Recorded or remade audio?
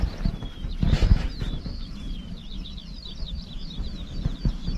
remade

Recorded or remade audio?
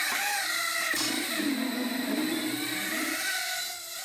remade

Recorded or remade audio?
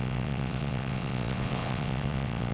remade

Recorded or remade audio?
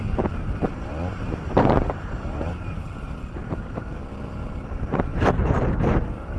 remade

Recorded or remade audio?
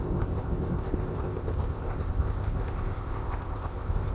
remade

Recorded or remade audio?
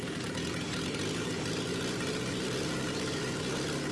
recorded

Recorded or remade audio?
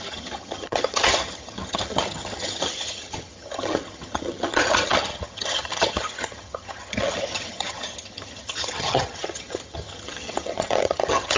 remade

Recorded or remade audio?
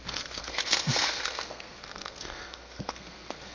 remade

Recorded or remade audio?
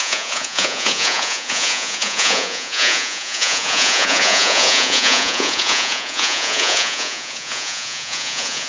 remade